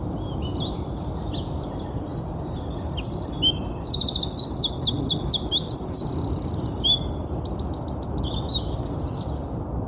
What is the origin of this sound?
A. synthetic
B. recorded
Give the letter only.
B